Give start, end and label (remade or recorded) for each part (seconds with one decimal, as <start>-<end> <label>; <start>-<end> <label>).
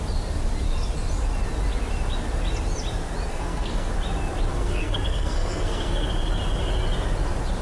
0.0-3.3 recorded; 3.3-3.9 remade; 3.9-4.5 recorded; 4.5-6.1 remade; 6.1-7.6 recorded